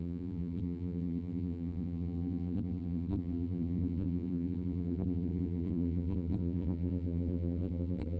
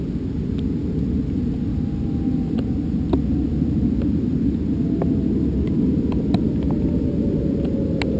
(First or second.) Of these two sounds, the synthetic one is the first